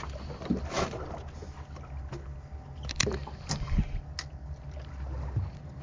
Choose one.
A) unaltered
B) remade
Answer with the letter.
A